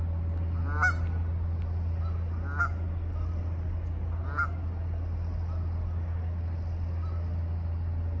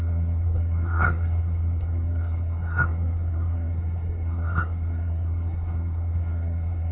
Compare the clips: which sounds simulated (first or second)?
second